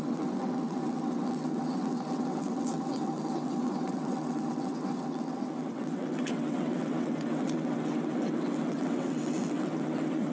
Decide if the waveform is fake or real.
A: fake